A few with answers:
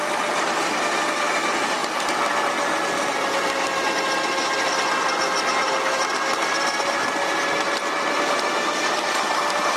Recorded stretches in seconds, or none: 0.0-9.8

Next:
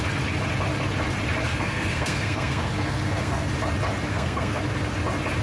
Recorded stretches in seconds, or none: 0.0-1.5; 3.5-4.1; 4.6-5.4